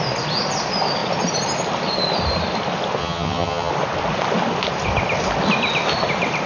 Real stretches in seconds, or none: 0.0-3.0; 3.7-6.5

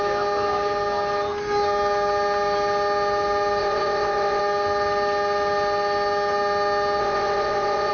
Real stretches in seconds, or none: 0.0-3.6; 4.4-7.0

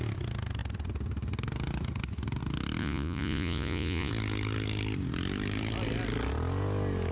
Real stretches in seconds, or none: 0.0-2.8; 4.1-7.1

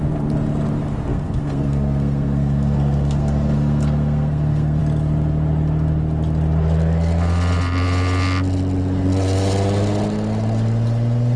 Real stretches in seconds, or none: 0.0-1.1; 4.8-11.4

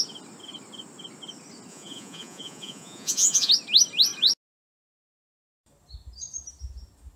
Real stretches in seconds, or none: 0.0-1.7; 3.5-7.2